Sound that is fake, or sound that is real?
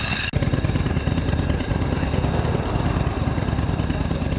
real